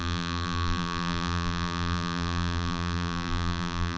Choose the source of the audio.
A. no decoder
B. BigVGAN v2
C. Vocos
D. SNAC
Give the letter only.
B